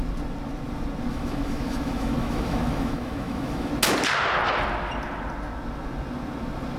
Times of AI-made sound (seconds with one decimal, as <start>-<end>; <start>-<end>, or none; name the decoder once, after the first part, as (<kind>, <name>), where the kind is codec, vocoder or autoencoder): 1.1-3.7 (autoencoder, DAC-VAE)